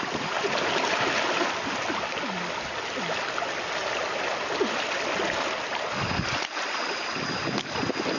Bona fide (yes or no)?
yes